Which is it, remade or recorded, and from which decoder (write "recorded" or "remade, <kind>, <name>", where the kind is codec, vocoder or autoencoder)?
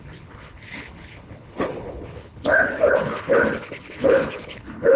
remade, codec, HILCodec